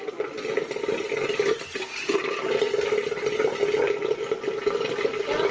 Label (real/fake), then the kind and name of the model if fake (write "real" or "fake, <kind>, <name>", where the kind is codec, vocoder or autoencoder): real